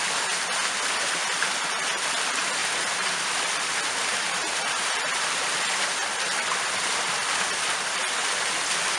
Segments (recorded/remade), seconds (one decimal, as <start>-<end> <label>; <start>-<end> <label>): 0.0-2.6 recorded; 2.6-3.8 remade; 3.8-4.5 recorded; 4.5-8.0 remade; 8.0-9.0 recorded